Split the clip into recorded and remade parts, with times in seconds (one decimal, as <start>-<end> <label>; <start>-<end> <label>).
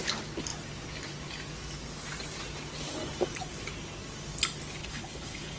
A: 0.0-4.8 recorded; 4.8-5.6 remade